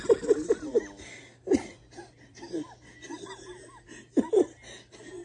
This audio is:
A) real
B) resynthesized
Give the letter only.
A